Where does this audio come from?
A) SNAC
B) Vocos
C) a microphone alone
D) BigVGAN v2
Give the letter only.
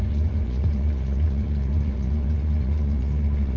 B